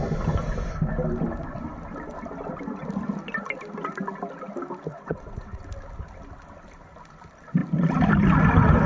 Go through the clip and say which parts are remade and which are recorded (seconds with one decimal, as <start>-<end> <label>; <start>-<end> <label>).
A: 0.0-4.9 recorded; 4.9-5.6 remade; 5.6-8.9 recorded